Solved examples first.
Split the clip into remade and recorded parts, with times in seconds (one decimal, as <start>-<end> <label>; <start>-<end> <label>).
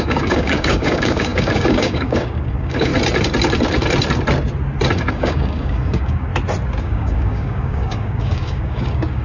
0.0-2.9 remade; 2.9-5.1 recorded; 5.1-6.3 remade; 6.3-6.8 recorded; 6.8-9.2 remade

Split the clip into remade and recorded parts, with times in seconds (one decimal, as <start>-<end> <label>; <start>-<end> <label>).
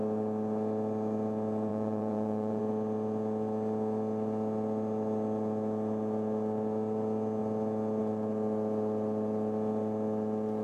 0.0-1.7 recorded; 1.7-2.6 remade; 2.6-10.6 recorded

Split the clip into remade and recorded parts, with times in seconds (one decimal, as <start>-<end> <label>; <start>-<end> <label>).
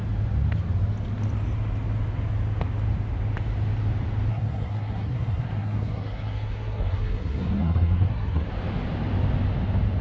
0.0-4.3 recorded; 4.3-8.5 remade; 8.5-10.0 recorded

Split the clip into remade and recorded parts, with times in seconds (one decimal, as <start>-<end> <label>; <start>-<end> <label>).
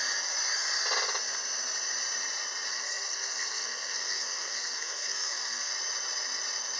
0.0-2.7 recorded; 2.7-5.7 remade; 5.7-6.8 recorded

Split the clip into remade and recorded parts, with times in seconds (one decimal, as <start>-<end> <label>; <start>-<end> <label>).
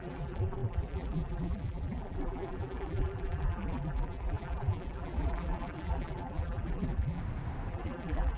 0.0-7.2 remade; 7.2-7.7 recorded; 7.7-8.4 remade